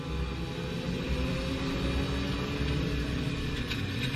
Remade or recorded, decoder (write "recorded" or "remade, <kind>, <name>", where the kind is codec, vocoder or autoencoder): recorded